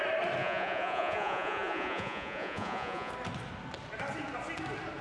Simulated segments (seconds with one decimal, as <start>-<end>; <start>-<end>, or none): 0.4-3.1